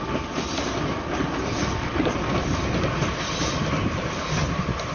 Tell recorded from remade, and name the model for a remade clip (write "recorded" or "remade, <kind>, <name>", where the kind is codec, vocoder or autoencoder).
recorded